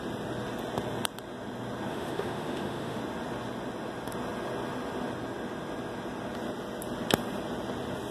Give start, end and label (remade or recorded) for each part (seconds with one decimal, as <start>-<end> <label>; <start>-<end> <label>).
0.0-1.9 recorded; 1.9-3.0 remade; 3.0-8.1 recorded